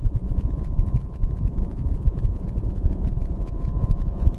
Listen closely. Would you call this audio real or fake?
fake